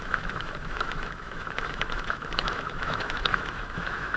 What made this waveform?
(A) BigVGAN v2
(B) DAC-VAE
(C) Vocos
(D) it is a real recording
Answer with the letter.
B